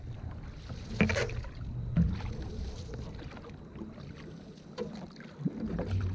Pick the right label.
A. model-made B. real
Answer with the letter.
B